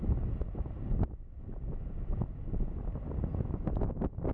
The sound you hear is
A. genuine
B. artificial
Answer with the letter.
A